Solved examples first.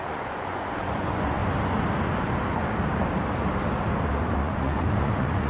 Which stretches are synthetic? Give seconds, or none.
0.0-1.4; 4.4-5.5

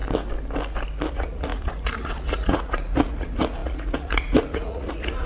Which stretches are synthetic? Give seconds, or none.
1.1-5.3

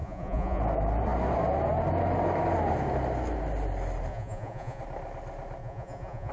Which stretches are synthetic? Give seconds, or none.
0.0-0.6; 4.1-4.8; 5.6-6.3

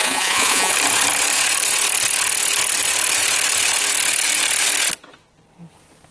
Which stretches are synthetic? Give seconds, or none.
0.0-0.7